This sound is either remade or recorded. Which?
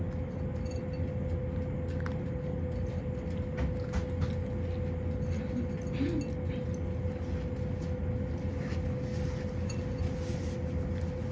recorded